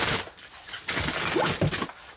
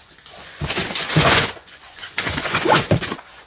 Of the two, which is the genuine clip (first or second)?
first